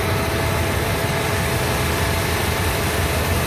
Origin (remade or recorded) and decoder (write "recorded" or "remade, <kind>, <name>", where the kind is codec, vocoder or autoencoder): recorded